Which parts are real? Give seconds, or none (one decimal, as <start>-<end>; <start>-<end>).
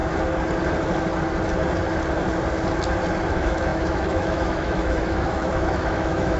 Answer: 0.0-3.3